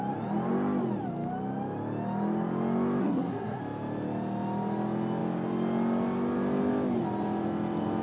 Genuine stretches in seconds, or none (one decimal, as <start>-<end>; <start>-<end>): 0.0-3.0; 3.6-8.0